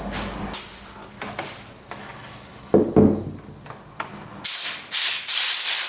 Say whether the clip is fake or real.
real